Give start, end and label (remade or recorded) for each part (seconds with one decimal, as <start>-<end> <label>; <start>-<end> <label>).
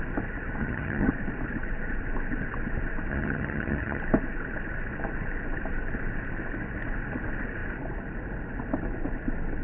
0.0-0.6 recorded; 0.6-1.1 remade; 1.1-3.1 recorded; 3.1-4.0 remade; 4.0-9.6 recorded